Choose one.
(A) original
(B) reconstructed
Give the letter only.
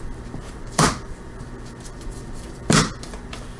B